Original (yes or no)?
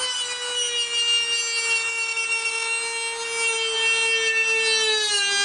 yes